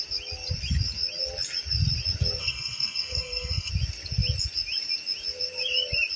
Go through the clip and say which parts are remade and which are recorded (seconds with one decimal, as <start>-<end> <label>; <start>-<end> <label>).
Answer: 0.0-2.4 recorded; 2.4-3.7 remade; 3.7-6.2 recorded